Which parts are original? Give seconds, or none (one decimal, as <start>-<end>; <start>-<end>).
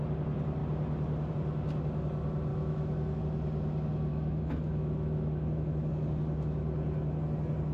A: 0.0-2.5; 3.2-4.1; 5.9-7.7